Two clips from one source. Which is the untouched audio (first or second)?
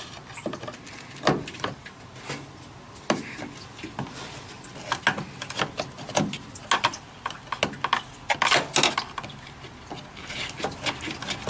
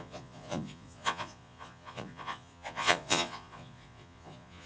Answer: first